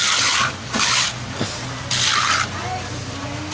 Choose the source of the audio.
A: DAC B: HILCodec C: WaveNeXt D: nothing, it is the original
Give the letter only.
D